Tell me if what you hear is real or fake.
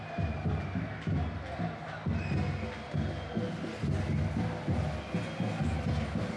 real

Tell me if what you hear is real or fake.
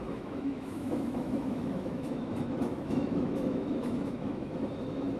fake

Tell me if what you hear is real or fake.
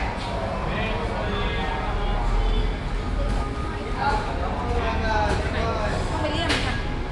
real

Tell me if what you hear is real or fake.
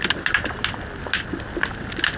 real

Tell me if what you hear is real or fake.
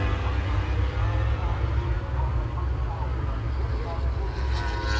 real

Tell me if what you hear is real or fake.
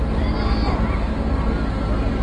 real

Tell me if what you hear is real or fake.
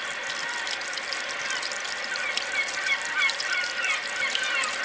real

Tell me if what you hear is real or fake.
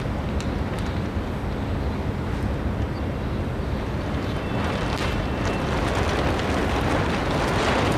real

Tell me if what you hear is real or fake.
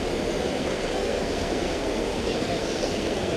fake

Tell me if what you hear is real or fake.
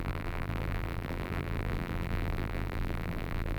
fake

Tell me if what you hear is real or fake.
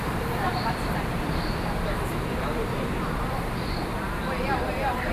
fake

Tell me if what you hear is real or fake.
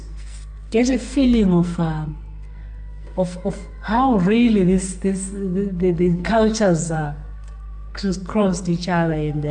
fake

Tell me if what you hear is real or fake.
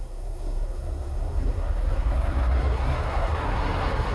fake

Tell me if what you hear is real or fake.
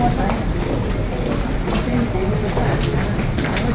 real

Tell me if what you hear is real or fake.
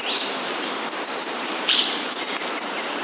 fake